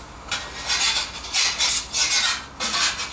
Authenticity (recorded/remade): recorded